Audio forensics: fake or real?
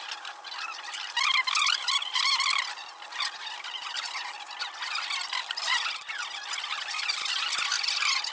real